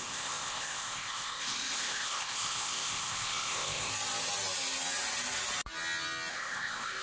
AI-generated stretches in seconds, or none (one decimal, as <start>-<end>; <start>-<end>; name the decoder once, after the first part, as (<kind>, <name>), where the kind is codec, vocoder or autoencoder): 0.0-3.9 (codec, ZipCodec); 6.3-7.0

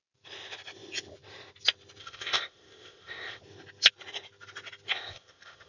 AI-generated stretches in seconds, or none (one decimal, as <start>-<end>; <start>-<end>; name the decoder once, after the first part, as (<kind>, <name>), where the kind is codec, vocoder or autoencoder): 2.0-3.4 (codec, ZipCodec); 4.9-5.7